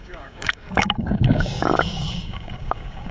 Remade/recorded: remade